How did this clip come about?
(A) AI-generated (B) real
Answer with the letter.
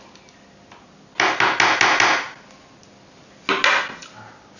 B